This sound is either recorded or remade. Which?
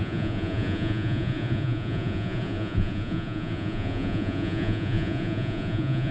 remade